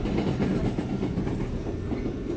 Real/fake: real